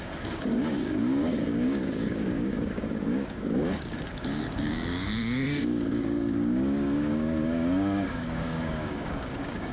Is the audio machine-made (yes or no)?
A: yes